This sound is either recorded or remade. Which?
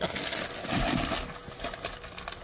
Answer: recorded